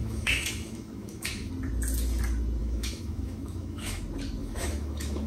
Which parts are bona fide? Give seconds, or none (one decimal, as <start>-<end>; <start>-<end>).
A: 1.5-2.6; 4.0-4.4